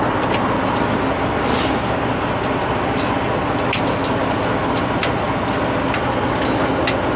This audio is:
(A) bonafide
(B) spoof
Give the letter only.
A